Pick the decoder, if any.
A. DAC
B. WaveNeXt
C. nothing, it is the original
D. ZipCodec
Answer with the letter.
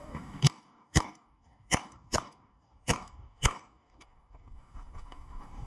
A